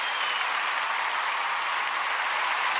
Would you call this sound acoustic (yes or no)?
yes